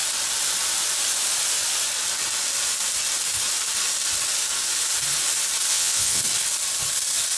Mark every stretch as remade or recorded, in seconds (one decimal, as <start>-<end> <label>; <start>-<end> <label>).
0.0-5.7 recorded; 5.7-6.2 remade; 6.2-7.4 recorded